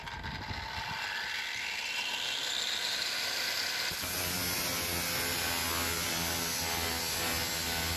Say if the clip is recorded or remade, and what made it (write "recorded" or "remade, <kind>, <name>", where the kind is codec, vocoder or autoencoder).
recorded